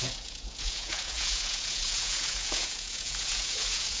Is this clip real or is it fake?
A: fake